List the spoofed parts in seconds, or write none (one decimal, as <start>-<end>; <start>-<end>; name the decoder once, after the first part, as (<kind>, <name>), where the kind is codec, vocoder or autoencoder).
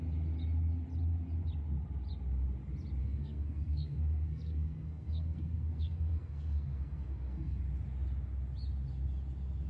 3.0-7.6 (codec, SNAC)